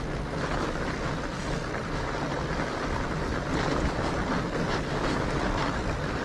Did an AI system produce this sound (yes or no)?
no